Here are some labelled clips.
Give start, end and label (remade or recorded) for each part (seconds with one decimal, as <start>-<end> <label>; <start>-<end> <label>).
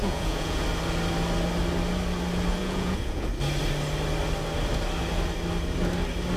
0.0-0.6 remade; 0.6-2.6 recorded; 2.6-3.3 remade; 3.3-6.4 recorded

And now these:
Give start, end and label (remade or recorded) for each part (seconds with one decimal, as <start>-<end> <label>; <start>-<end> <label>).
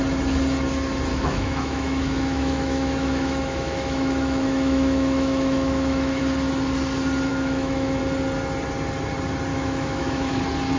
0.0-1.1 recorded; 1.1-6.2 remade; 6.2-7.3 recorded; 7.3-8.0 remade; 8.0-9.5 recorded; 9.5-10.4 remade; 10.4-10.8 recorded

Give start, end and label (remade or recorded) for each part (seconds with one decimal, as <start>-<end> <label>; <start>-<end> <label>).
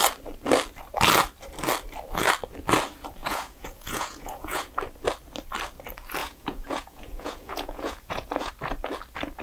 0.0-3.2 recorded; 3.2-4.7 remade; 4.7-6.2 recorded; 6.2-8.5 remade; 8.5-9.4 recorded